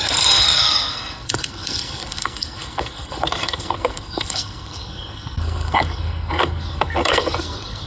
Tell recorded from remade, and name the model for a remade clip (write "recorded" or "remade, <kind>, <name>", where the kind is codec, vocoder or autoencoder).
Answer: remade, codec, SNAC